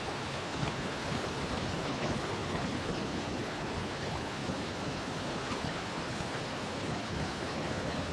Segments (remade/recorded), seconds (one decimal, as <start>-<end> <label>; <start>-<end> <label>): 0.0-8.1 remade